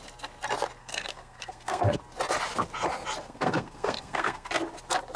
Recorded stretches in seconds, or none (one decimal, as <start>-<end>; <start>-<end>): 0.0-0.8; 2.0-3.2; 4.5-5.2